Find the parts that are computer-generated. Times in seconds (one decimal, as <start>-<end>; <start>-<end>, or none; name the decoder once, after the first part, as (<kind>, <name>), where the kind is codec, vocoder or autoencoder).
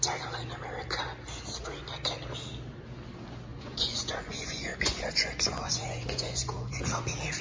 3.5-6.9 (vocoder, Vocos)